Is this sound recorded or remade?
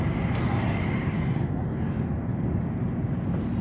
recorded